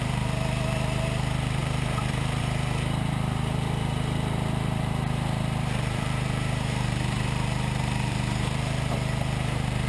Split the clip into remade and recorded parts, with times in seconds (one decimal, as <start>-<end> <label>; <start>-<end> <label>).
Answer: 0.0-9.9 remade